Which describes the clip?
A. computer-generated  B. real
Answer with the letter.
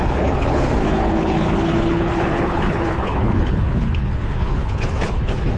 A